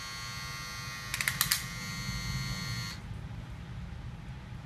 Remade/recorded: recorded